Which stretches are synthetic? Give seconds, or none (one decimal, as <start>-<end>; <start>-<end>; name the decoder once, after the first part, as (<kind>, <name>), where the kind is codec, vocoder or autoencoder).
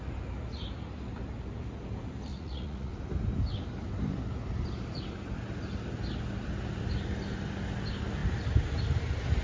2.3-2.9 (vocoder, Vocos)